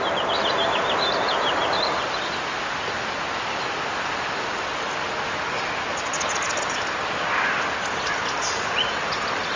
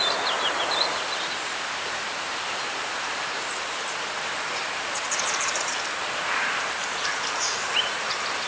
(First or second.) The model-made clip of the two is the second